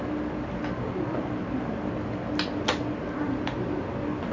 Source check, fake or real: real